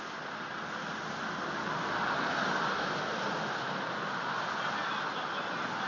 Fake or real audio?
real